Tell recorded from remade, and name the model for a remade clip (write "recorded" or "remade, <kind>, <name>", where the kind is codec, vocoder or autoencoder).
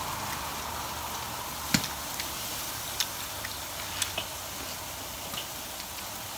recorded